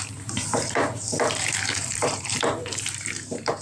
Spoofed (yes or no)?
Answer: yes